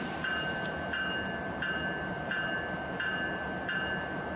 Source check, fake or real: real